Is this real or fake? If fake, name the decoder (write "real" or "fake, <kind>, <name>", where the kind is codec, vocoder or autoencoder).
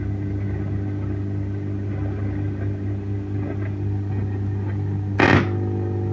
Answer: real